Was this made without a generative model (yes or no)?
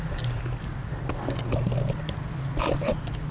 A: yes